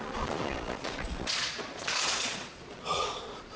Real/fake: fake